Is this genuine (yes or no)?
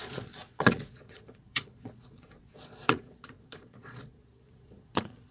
no